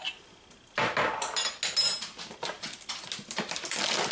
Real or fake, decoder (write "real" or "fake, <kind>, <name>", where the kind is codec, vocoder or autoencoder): real